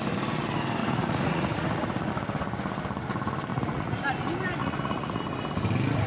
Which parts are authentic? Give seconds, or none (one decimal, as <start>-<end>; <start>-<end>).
0.0-0.8; 2.1-3.5; 4.0-4.6; 5.2-6.1

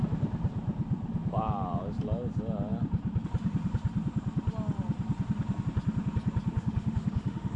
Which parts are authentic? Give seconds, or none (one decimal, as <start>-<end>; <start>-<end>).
0.0-6.5

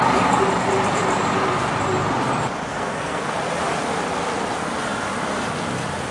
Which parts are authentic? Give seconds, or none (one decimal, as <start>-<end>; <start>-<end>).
0.0-2.7; 3.3-6.1

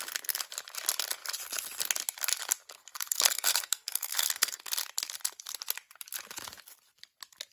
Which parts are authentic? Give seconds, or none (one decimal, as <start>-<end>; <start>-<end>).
0.0-2.8; 4.7-7.5

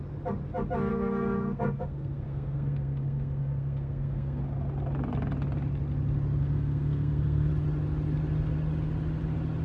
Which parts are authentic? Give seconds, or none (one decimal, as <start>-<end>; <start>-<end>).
0.0-0.9; 4.4-6.4; 7.5-9.6

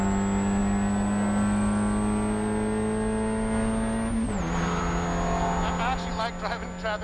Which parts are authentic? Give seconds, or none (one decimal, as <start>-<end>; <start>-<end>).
0.0-7.0

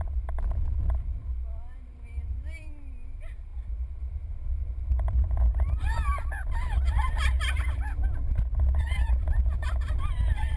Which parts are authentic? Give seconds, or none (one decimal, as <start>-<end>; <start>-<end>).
none